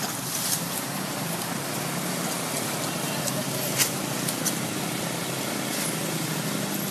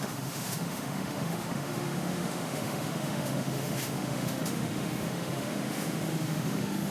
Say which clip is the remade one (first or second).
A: second